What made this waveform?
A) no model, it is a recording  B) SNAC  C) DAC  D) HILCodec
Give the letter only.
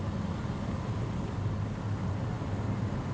A